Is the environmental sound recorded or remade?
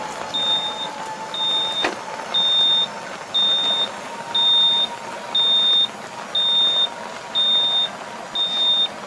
recorded